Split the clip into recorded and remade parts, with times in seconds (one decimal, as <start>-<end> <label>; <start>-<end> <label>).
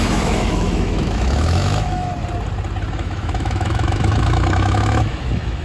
0.0-2.1 remade; 2.1-2.9 recorded; 2.9-5.6 remade